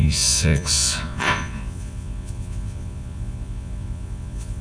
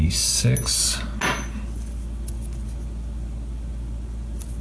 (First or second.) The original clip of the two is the second